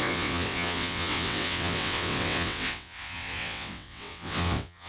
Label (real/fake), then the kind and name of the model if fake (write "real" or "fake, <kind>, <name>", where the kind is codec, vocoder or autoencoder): fake, vocoder, WaveNeXt